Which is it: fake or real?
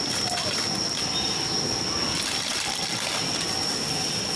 real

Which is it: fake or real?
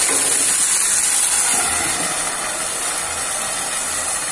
real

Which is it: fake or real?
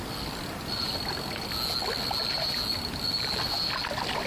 real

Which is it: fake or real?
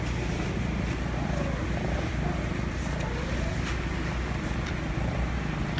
real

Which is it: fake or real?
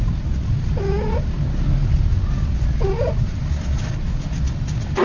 real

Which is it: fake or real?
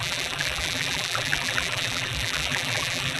fake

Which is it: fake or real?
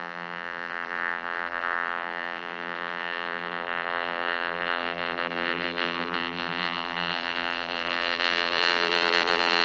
fake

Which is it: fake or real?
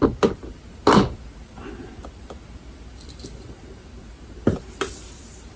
real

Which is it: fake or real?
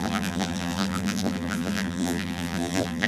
fake